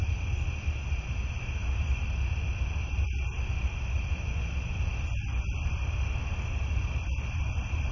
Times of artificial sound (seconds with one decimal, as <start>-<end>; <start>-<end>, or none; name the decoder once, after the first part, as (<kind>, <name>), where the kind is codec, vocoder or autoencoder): none